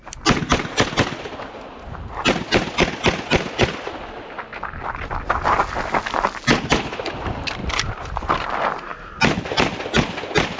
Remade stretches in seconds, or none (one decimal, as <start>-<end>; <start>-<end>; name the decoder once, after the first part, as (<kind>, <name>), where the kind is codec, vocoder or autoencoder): none